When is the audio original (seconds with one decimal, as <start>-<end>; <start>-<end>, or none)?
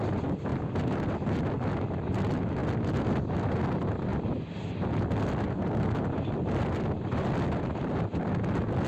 0.0-8.9